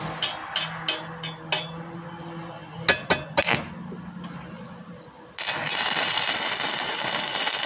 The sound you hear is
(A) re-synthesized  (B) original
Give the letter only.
B